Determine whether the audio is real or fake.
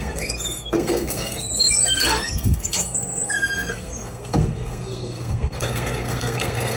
fake